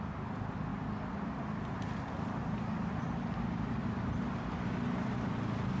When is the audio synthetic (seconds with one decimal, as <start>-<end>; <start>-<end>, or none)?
none